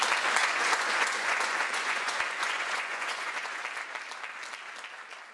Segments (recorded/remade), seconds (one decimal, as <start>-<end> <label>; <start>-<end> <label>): 0.0-0.4 recorded; 0.4-3.6 remade; 3.6-5.3 recorded